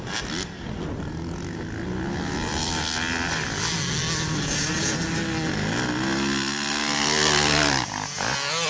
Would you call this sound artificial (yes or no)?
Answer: no